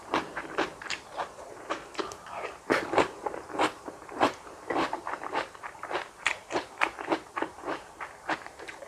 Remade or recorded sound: remade